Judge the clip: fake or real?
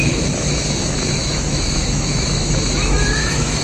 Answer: fake